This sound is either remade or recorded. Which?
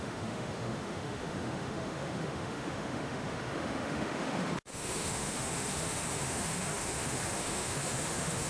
remade